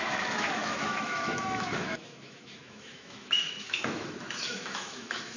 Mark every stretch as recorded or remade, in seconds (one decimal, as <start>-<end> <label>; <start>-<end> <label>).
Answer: 0.0-5.4 remade